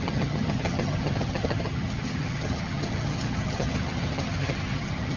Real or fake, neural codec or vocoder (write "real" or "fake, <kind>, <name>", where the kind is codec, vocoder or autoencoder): fake, vocoder, HiFi-GAN